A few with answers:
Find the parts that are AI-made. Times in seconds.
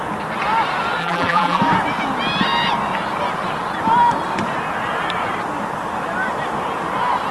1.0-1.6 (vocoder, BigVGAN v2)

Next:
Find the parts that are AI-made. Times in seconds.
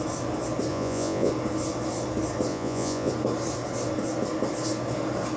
0.7-1.3 (vocoder, Vocos); 2.5-3.1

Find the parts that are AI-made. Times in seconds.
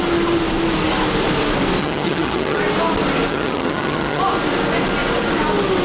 1.8-2.6 (vocoder, HiFi-GAN); 3.3-4.2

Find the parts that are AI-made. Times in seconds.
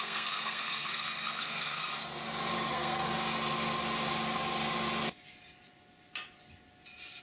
0.0-1.8 (codec, SNAC); 2.7-3.1